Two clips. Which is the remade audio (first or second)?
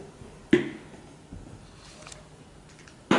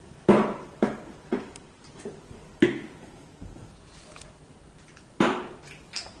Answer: second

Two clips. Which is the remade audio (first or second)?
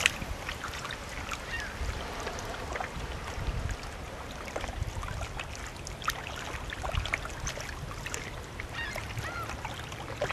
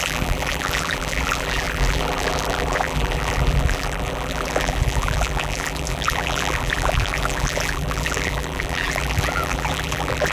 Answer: second